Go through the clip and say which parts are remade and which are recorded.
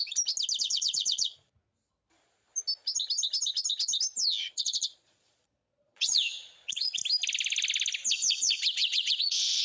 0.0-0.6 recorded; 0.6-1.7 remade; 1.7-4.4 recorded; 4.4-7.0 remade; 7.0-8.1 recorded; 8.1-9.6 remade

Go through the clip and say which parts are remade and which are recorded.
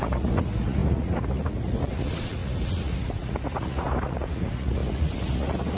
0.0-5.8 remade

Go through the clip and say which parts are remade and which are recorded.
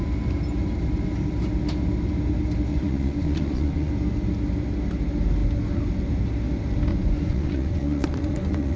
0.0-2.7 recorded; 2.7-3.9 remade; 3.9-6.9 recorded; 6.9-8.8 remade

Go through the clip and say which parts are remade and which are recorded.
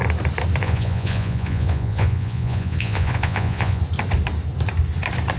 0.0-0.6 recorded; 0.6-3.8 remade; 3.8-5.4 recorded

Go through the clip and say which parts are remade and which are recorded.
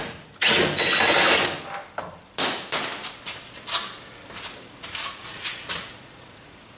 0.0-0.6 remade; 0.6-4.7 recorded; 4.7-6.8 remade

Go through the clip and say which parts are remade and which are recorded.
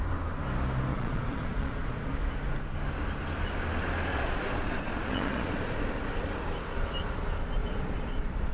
0.0-0.9 recorded; 0.9-2.1 remade; 2.1-4.1 recorded; 4.1-5.7 remade; 5.7-7.6 recorded; 7.6-8.5 remade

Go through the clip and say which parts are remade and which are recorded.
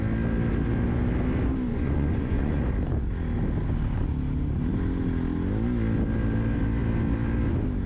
0.0-1.7 recorded; 1.7-2.6 remade; 2.6-7.9 recorded